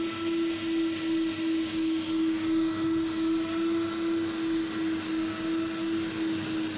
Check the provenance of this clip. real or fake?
real